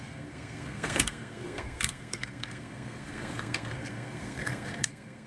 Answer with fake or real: fake